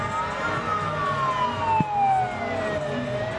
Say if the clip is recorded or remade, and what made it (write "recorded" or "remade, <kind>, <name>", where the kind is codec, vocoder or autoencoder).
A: recorded